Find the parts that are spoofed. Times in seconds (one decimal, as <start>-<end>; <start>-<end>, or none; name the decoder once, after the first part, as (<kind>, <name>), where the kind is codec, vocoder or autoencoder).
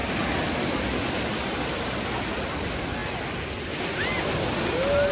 none